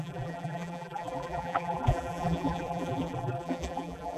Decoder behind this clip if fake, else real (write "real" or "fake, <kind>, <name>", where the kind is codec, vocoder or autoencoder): fake, vocoder, BigVGAN v2